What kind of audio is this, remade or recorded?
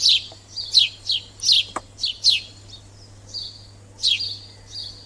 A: recorded